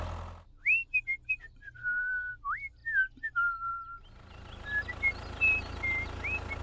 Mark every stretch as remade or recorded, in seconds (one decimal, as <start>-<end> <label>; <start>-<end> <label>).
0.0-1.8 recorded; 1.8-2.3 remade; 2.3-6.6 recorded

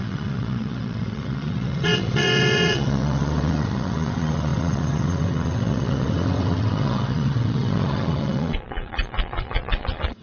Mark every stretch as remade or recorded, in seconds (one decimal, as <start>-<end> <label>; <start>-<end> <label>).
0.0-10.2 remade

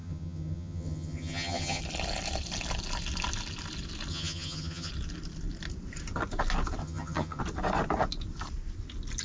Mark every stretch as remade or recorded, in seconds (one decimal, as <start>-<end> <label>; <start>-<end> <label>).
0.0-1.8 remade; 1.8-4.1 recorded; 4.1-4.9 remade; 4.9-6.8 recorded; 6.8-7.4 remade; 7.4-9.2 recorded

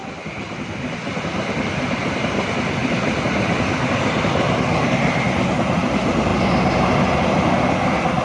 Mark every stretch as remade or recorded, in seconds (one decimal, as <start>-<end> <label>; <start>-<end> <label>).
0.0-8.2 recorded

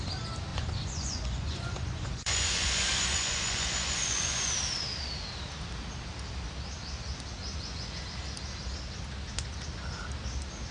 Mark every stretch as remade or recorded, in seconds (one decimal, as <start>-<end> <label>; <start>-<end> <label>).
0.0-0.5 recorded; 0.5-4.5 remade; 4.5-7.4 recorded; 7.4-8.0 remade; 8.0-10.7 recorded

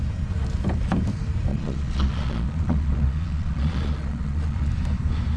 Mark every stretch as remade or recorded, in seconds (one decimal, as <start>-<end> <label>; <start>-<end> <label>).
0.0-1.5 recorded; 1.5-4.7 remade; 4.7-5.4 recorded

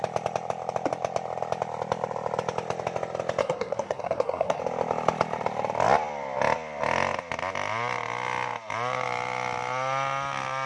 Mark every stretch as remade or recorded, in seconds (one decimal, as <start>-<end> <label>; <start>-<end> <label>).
0.0-3.4 recorded; 3.4-4.6 remade; 4.6-10.7 recorded

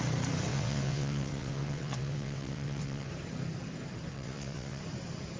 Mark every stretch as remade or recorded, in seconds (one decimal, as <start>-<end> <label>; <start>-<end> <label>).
0.0-0.5 recorded; 0.5-3.1 remade; 3.1-4.1 recorded; 4.1-4.8 remade; 4.8-5.4 recorded